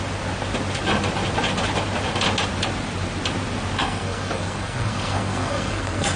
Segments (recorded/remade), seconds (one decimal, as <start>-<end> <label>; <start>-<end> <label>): 0.0-3.8 recorded; 3.8-6.2 remade